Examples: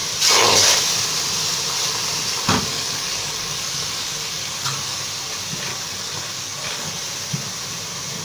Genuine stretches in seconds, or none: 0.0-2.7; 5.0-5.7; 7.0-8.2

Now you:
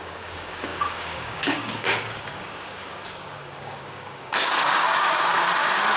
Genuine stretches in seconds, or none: none

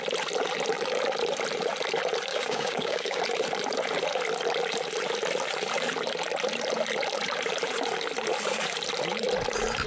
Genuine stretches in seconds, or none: 0.0-2.3; 3.2-9.9

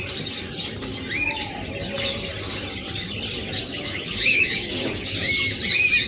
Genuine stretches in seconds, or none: 0.0-3.6; 5.3-6.1